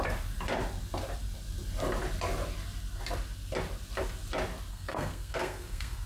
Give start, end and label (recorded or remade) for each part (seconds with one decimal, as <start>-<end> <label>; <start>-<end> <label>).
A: 0.0-4.7 recorded; 4.7-6.1 remade